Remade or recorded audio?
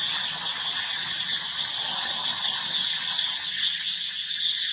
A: recorded